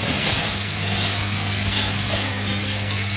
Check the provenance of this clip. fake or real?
fake